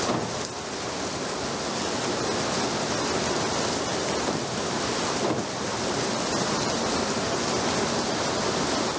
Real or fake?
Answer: real